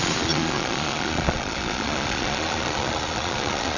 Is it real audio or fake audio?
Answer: fake